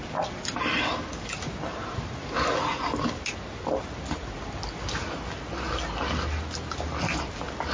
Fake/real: real